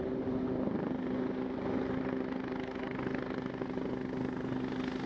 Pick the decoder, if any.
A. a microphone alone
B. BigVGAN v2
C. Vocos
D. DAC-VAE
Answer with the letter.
A